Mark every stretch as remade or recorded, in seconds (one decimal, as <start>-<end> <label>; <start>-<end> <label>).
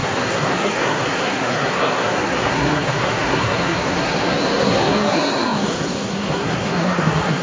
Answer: 0.0-7.4 remade